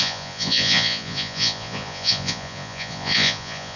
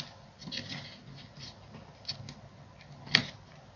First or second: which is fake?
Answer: first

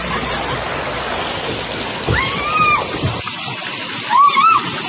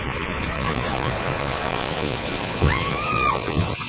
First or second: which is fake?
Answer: second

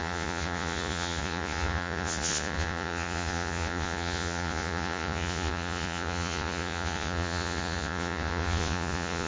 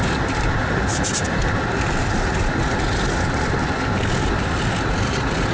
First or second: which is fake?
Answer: first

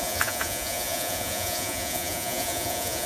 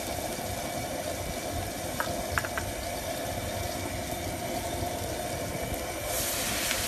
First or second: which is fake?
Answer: first